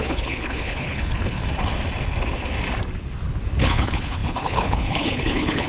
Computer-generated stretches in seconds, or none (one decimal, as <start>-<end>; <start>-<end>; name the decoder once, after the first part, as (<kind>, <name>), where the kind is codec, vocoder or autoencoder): 0.0-1.4 (codec, HILCodec); 3.6-5.7